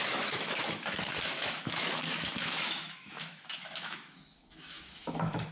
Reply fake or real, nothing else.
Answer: fake